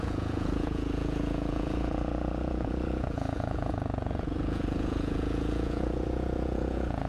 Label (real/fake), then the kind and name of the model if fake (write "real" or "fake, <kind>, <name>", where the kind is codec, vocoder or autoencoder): fake, vocoder, Vocos